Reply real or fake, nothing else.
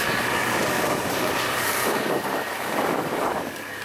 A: fake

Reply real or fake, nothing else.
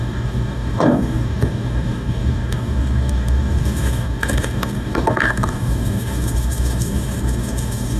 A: fake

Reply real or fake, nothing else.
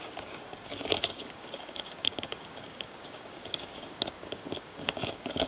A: fake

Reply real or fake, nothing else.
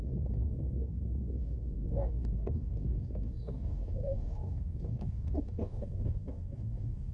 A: fake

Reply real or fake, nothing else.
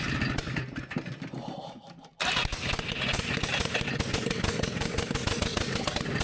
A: real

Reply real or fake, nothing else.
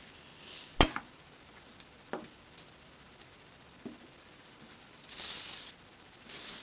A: real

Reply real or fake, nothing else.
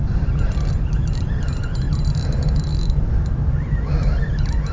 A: real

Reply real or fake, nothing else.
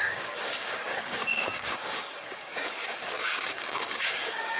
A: fake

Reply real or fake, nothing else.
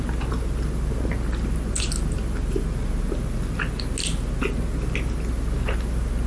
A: real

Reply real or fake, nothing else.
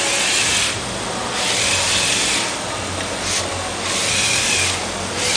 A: real